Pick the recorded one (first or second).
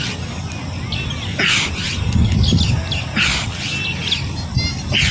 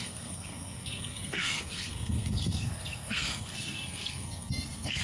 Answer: first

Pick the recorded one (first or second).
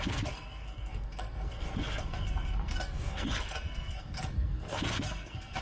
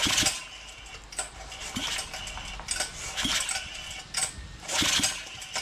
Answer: second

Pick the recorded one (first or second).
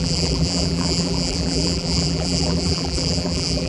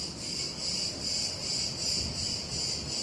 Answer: second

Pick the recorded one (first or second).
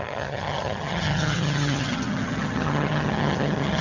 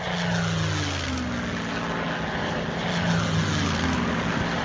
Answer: second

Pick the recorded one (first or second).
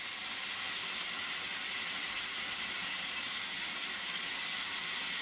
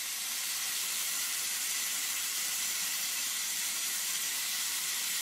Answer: first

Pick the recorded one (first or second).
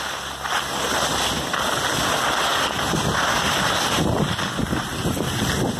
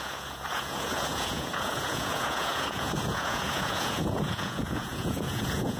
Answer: first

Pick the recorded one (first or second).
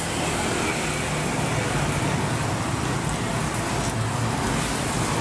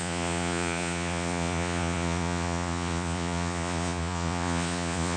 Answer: first